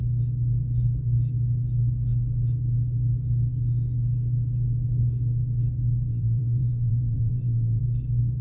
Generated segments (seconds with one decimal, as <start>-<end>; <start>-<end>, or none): 6.1-7.8